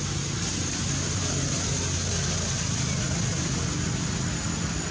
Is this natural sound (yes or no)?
yes